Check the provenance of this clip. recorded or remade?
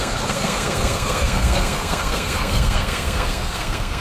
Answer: remade